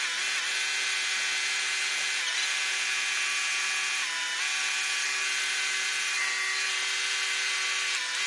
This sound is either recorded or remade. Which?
recorded